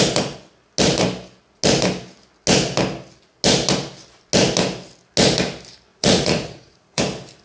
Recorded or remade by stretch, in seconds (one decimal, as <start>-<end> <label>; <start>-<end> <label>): 0.0-5.9 recorded; 5.9-7.0 remade; 7.0-7.4 recorded